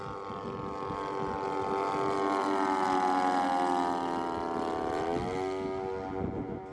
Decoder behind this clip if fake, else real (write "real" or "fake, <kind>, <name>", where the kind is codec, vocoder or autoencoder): real